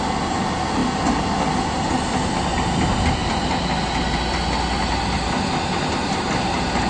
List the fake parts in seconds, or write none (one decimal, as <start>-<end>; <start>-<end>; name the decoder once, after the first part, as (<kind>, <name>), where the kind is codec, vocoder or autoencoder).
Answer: none